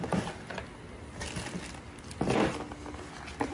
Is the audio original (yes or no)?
yes